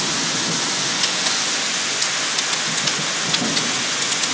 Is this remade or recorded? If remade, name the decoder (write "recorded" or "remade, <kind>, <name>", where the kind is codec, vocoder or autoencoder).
remade, vocoder, Vocos